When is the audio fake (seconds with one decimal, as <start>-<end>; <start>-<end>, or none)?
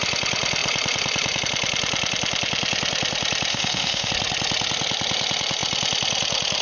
3.5-4.1